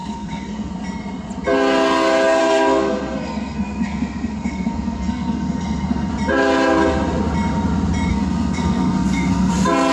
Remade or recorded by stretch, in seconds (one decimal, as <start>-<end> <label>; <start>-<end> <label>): 0.0-0.7 remade; 0.7-2.4 recorded; 2.4-6.1 remade; 6.1-8.1 recorded; 8.1-9.5 remade; 9.5-9.9 recorded